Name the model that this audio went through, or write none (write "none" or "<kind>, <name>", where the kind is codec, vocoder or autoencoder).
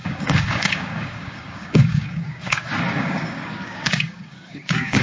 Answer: codec, DAC